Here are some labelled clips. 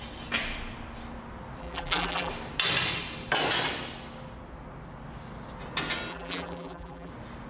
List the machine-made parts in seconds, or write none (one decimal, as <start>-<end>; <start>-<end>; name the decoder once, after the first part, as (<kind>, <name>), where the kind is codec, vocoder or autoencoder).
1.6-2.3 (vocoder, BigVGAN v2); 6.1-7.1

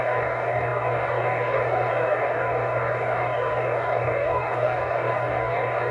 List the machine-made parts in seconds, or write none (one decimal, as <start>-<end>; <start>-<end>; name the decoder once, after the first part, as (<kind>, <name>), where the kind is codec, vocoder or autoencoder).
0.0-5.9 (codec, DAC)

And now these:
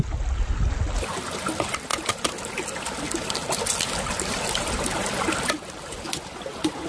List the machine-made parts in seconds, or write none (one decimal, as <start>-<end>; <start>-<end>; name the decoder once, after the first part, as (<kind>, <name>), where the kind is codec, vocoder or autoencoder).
none